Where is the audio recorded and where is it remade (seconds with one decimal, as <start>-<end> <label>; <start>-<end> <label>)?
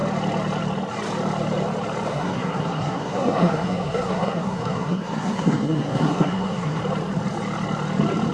0.0-2.1 recorded; 2.1-6.8 remade; 6.8-8.3 recorded